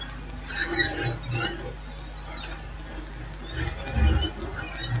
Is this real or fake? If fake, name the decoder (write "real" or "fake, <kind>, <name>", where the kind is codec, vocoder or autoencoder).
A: real